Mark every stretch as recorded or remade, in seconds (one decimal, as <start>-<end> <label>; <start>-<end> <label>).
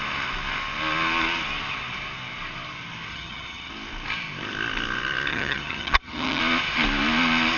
0.0-3.1 recorded; 3.1-3.7 remade; 3.7-5.3 recorded; 5.3-6.4 remade; 6.4-7.6 recorded